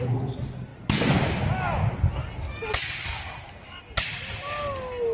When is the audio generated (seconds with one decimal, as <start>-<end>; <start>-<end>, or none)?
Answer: none